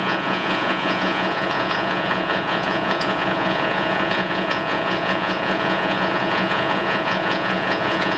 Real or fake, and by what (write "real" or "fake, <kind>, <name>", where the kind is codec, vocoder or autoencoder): fake, vocoder, Vocos